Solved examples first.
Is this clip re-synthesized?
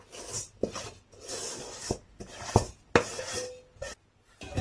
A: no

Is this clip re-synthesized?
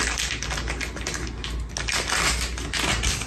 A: no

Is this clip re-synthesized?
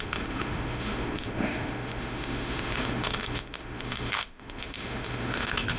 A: yes